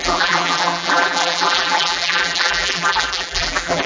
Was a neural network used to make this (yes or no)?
yes